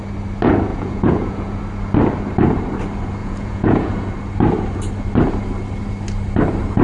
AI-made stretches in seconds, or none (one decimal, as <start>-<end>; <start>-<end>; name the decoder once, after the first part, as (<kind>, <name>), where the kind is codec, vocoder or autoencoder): 0.7-1.6 (vocoder, Vocos); 3.2-4.1

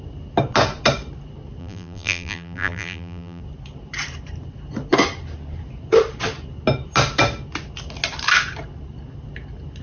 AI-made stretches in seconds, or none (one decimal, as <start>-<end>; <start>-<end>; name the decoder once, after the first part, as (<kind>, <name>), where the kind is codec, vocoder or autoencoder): 1.6-3.4 (vocoder, BigVGAN v2)

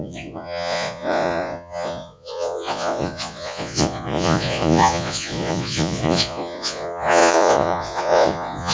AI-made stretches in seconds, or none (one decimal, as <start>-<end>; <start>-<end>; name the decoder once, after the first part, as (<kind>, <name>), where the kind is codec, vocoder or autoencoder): 0.0-8.7 (vocoder, Vocos)

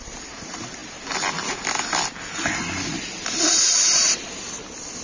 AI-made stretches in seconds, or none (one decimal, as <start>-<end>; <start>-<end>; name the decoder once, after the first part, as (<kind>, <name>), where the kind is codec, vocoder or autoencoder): none

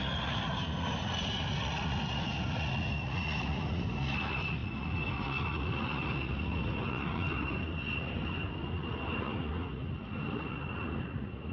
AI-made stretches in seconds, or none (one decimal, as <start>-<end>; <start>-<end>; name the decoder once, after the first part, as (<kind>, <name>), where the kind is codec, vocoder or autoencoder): 0.0-11.5 (vocoder, Vocos)

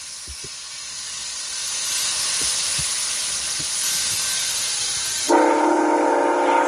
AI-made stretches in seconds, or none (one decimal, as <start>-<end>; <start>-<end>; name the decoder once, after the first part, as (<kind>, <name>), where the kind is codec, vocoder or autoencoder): none

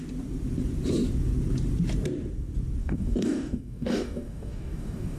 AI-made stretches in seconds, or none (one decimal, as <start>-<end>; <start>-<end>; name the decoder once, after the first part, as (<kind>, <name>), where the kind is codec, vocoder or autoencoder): 2.8-5.2 (codec, DAC)

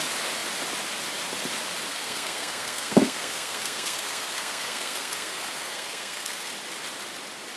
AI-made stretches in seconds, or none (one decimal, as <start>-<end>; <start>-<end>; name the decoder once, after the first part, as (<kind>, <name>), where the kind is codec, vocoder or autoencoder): 1.9-6.5 (codec, SNAC)